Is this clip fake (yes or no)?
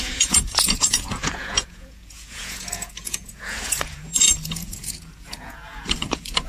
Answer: yes